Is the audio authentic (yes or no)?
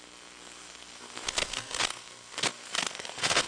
no